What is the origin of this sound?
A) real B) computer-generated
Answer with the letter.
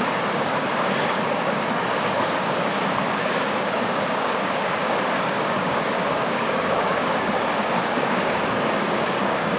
B